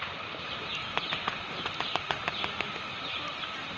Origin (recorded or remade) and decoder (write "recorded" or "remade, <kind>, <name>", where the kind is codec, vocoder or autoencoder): recorded